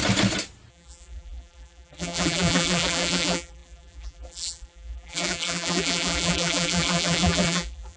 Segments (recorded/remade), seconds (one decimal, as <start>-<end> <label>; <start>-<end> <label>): 0.0-0.7 recorded; 0.7-8.0 remade